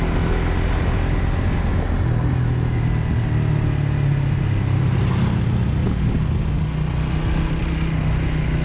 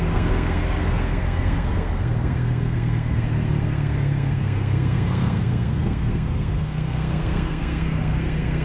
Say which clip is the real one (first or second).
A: first